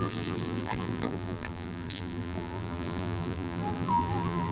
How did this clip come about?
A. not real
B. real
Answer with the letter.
A